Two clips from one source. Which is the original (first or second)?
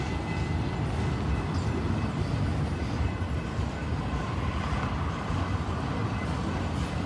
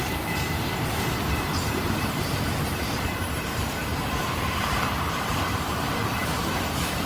first